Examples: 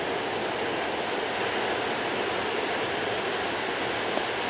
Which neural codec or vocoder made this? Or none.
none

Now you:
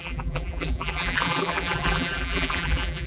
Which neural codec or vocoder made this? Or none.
vocoder, BigVGAN v2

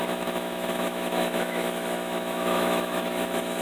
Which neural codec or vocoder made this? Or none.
autoencoder, DAC-VAE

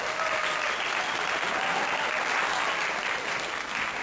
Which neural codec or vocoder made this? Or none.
none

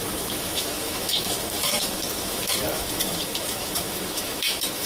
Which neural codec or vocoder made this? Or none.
autoencoder, DAC-VAE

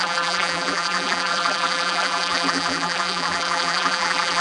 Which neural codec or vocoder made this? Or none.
vocoder, BigVGAN v2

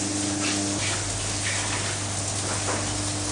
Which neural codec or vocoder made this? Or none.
none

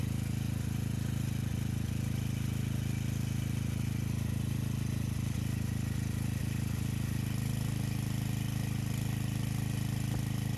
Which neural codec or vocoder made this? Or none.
none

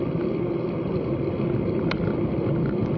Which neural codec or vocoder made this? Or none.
none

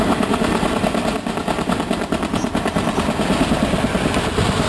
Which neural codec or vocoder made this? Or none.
none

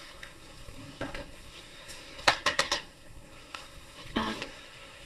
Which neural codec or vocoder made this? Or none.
codec, SNAC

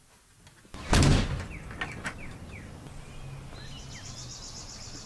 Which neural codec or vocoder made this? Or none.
none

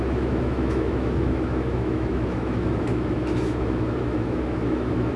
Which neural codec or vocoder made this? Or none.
autoencoder, DAC-VAE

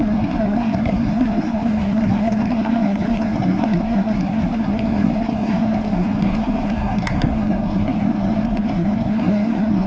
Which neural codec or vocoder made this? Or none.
codec, SNAC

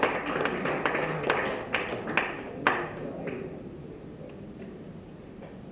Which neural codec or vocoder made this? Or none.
none